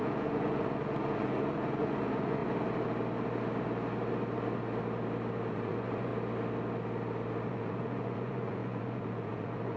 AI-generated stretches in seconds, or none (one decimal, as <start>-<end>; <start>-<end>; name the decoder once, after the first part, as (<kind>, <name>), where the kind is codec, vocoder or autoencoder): 0.0-2.4 (vocoder, Vocos); 5.5-6.1; 7.5-9.8